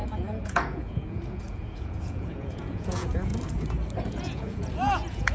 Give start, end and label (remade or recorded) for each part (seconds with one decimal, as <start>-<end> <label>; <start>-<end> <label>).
0.0-3.3 remade; 3.3-4.1 recorded; 4.1-5.3 remade